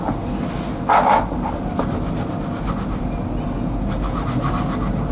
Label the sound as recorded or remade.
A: recorded